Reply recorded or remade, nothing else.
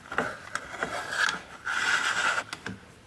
recorded